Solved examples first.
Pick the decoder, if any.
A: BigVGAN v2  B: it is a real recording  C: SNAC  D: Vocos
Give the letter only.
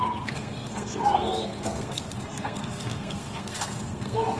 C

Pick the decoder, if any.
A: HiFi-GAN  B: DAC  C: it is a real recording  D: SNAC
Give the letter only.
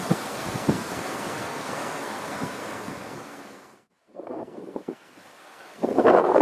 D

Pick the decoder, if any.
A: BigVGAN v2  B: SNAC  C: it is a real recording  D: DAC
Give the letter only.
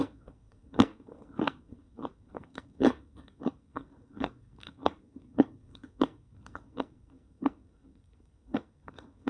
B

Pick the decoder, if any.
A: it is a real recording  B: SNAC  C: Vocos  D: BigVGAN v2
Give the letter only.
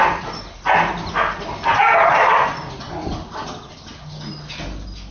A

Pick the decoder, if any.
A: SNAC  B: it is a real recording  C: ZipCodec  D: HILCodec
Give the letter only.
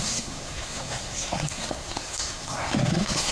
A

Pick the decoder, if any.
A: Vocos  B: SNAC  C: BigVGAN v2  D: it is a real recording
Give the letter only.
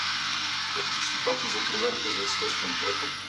B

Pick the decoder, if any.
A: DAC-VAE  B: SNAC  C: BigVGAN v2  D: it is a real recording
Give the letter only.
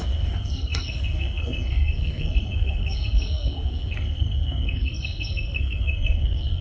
B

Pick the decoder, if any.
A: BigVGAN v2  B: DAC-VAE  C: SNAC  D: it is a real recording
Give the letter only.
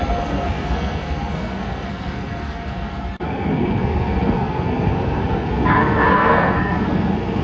C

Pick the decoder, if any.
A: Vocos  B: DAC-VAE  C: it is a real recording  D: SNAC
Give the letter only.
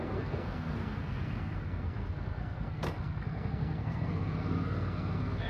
D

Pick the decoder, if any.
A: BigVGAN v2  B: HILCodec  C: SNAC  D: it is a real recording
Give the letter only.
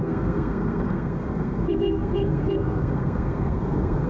C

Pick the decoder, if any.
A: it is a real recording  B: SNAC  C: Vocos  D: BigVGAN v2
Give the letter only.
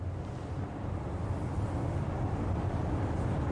A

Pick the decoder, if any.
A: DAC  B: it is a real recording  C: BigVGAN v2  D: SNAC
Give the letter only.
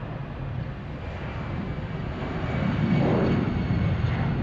B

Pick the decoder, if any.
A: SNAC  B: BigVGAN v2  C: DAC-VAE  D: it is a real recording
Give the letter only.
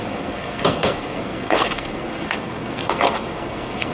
A